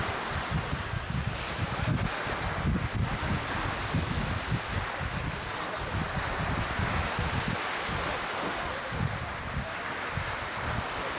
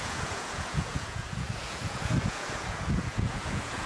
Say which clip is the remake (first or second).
second